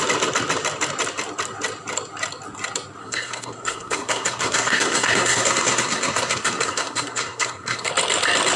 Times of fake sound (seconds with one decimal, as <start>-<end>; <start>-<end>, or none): 3.0-7.9